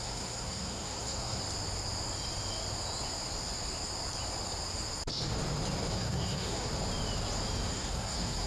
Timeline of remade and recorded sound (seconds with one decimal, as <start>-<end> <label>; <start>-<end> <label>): 0.0-1.4 remade; 1.4-5.9 recorded; 5.9-6.7 remade; 6.7-7.7 recorded; 7.7-8.5 remade